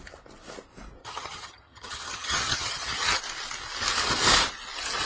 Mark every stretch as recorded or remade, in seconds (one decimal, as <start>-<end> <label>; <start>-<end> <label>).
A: 0.0-1.0 recorded; 1.0-3.2 remade; 3.2-5.1 recorded